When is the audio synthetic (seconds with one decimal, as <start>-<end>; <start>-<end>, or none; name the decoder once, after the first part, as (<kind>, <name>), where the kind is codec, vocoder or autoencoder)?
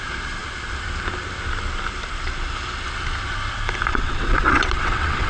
3.9-5.3 (vocoder, WaveNeXt)